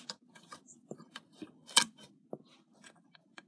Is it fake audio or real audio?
fake